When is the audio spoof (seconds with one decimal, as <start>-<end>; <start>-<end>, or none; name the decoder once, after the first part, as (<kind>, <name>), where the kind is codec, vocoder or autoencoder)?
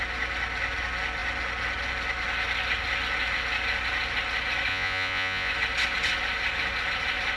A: 4.7-5.5 (vocoder, Vocos)